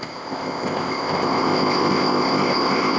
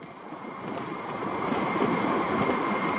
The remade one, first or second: first